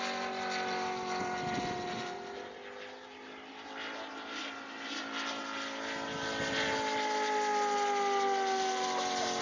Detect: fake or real real